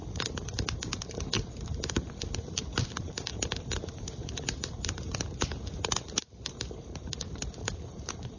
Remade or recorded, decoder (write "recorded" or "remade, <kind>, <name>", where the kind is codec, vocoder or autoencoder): remade, vocoder, BigVGAN v2